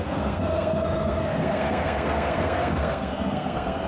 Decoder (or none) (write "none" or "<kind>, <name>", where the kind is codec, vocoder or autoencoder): codec, SNAC